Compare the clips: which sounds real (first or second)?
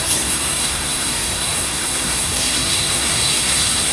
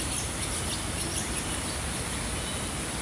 second